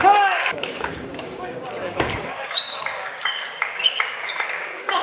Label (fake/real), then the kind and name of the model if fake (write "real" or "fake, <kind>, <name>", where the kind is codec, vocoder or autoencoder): fake, codec, DAC